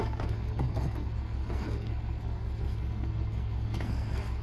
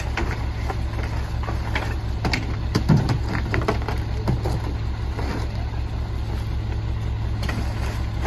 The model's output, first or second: first